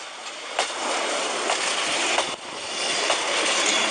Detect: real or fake real